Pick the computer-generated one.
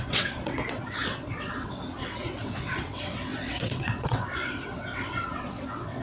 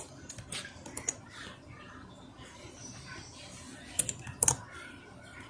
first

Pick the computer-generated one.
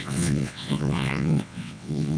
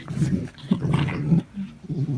first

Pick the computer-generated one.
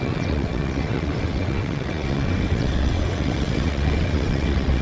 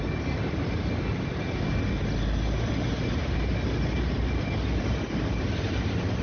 first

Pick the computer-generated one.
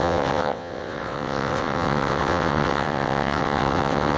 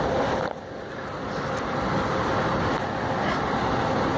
first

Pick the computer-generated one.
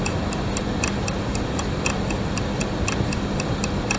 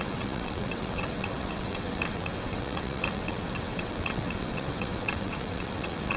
second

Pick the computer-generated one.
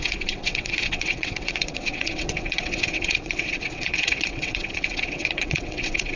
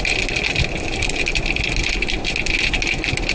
first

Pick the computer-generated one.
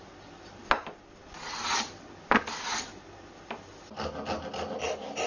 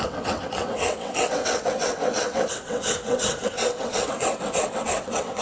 second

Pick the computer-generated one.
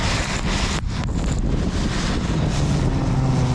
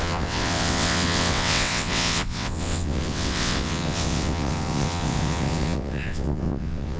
second